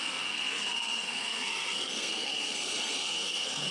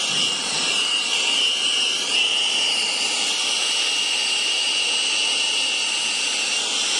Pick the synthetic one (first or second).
first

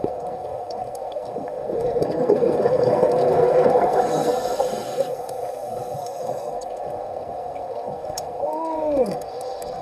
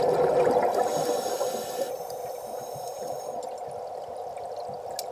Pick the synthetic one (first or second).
first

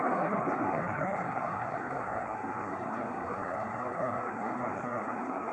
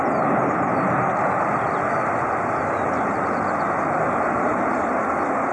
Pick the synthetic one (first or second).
first